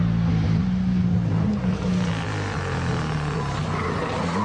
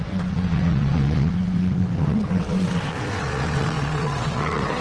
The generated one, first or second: second